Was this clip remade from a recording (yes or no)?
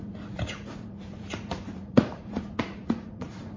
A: yes